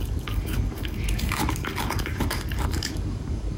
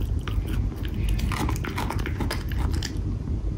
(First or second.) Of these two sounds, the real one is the second